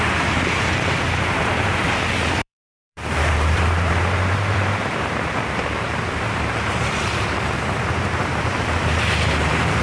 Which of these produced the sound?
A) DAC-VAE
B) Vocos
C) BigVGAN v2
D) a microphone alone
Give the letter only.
C